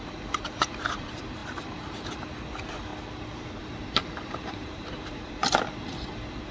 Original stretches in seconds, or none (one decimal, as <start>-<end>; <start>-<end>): 2.9-3.6; 5.4-6.5